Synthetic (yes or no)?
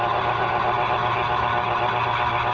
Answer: no